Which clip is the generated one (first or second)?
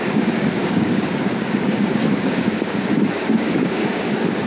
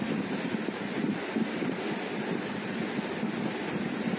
first